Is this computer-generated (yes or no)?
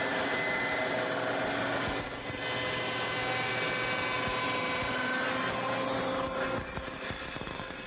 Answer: no